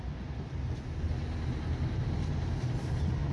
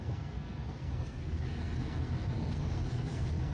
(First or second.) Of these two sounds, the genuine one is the first